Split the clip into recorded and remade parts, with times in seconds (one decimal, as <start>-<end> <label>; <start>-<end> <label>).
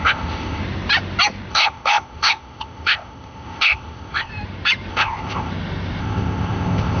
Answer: 0.0-0.6 remade; 0.6-1.5 recorded; 1.5-4.3 remade; 4.3-4.9 recorded; 4.9-5.5 remade; 5.5-6.0 recorded; 6.0-7.0 remade